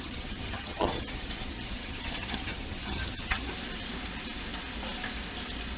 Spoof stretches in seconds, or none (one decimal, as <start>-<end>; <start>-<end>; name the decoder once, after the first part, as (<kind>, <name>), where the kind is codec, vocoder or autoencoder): 0.0-3.5 (vocoder, HiFi-GAN)